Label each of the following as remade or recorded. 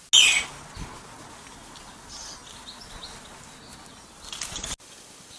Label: recorded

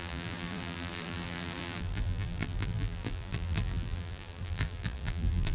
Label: remade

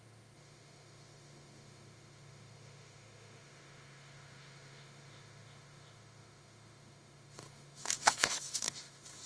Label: remade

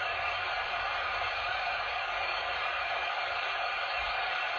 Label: remade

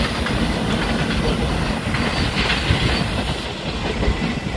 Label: recorded